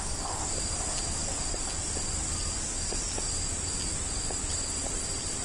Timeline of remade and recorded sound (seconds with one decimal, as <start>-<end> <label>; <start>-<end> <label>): 0.0-5.4 recorded